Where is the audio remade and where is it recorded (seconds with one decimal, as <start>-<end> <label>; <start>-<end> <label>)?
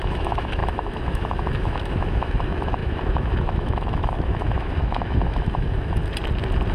0.0-6.0 remade; 6.0-6.7 recorded